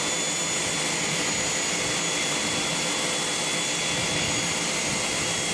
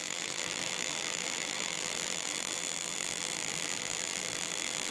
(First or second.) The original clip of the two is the first